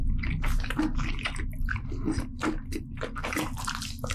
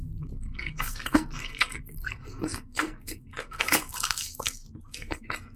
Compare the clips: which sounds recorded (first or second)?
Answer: first